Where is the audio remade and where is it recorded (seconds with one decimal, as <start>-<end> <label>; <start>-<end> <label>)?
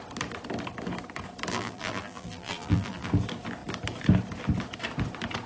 0.0-1.5 recorded; 1.5-3.1 remade; 3.1-5.5 recorded